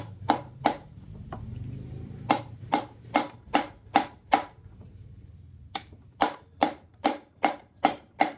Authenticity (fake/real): fake